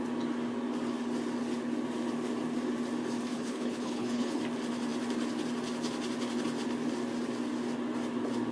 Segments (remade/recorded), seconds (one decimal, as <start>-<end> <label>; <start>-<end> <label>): 0.0-3.3 recorded; 3.3-4.4 remade; 4.4-8.5 recorded

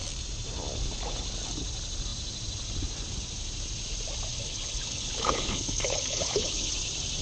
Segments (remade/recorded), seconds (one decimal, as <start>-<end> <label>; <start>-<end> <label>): 0.0-4.3 recorded; 4.3-6.7 remade; 6.7-7.2 recorded

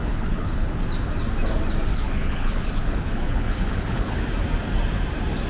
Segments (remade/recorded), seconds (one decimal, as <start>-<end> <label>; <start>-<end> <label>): 0.0-0.8 remade; 0.8-1.9 recorded; 1.9-4.2 remade; 4.2-5.5 recorded

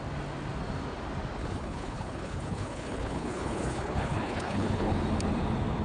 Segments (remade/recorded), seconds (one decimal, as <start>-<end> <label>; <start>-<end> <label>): 0.0-1.4 recorded; 1.4-4.9 remade; 4.9-5.8 recorded

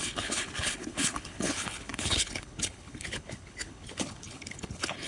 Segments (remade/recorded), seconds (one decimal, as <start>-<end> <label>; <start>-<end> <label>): 0.0-5.1 remade

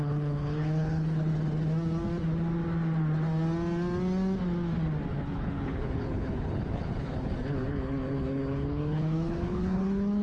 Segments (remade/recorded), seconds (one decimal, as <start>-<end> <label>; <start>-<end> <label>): 0.0-1.3 remade; 1.3-5.1 recorded; 5.1-10.2 remade

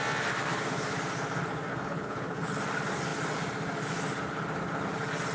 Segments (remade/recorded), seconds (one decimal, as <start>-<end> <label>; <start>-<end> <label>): 0.0-1.7 recorded; 1.7-2.6 remade; 2.6-5.3 recorded

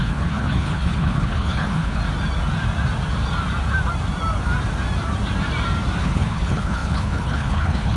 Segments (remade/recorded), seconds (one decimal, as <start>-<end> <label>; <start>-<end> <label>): 0.0-2.0 remade; 2.0-6.0 recorded; 6.0-8.0 remade